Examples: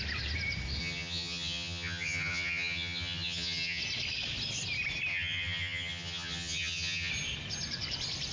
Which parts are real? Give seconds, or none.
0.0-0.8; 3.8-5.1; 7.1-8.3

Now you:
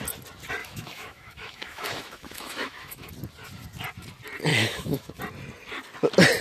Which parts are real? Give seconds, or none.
0.0-0.6; 3.1-4.5; 5.2-6.4

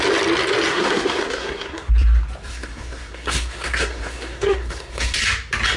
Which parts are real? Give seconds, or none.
0.0-0.7; 1.9-2.5; 5.2-5.8

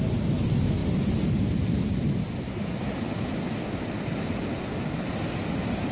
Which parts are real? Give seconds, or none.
0.0-5.9